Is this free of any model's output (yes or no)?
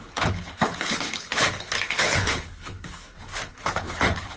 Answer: no